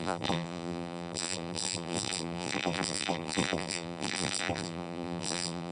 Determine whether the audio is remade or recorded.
remade